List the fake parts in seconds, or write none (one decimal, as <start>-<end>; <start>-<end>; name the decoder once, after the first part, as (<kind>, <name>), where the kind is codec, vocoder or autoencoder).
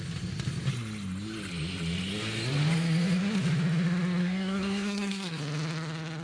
4.2-5.4 (codec, SNAC)